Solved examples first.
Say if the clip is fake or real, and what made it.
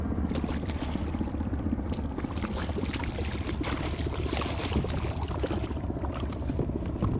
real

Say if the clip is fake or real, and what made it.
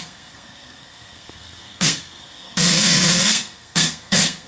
fake, codec, SNAC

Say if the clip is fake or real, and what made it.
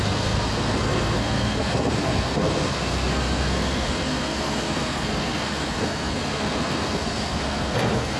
fake, codec, SNAC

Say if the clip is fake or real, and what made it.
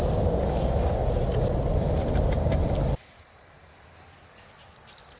real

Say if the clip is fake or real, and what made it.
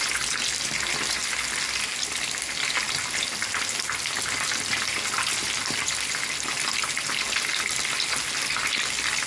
real